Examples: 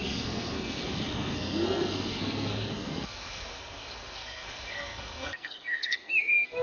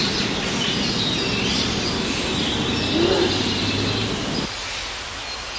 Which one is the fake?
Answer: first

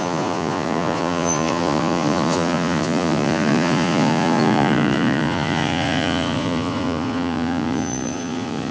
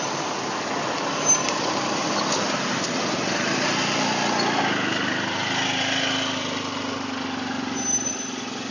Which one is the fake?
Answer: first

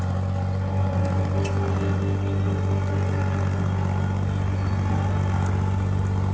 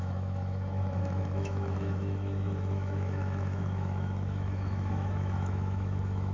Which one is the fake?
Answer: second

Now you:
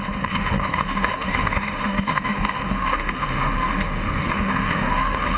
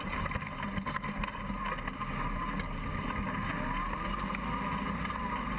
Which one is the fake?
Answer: first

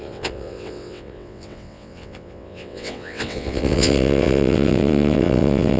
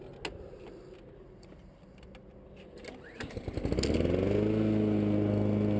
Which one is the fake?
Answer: first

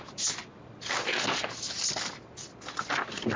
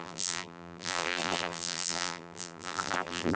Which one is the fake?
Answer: second